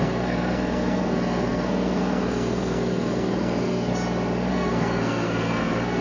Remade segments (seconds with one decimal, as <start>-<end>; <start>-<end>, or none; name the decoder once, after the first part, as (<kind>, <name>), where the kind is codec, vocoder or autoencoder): 0.0-3.9 (codec, SNAC); 4.5-6.0